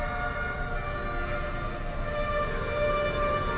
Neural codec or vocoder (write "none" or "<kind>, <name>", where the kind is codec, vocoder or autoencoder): none